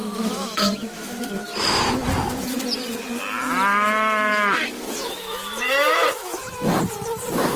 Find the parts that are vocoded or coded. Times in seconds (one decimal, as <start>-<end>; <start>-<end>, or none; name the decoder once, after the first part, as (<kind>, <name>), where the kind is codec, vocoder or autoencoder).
0.0-1.3 (autoencoder, DAC-VAE); 3.7-6.8